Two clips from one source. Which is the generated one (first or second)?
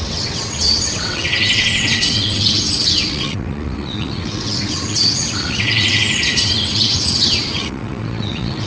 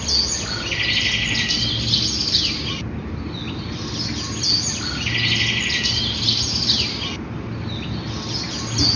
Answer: first